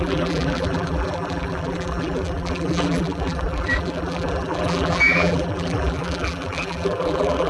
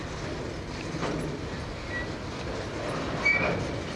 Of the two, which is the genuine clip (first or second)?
second